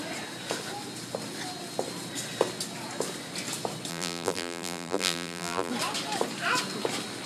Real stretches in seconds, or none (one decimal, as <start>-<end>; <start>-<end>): 0.0-3.9; 5.7-7.3